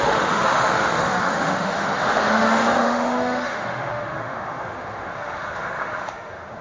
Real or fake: fake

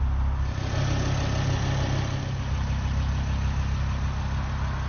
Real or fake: real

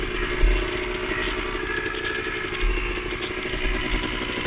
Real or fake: real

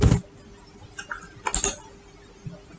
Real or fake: real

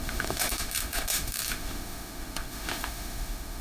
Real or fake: fake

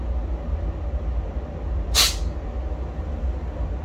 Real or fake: real